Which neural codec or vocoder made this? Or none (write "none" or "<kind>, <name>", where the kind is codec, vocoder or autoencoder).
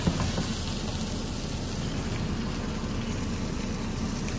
none